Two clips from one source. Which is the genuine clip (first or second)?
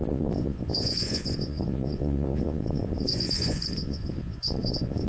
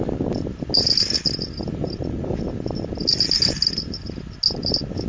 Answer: second